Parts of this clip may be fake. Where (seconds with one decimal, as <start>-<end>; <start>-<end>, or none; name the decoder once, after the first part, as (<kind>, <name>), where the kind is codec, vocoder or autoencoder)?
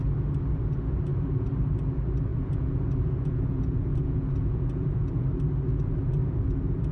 2.3-5.2 (vocoder, Vocos); 5.7-6.4